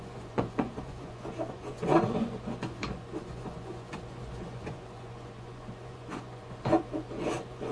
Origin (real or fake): fake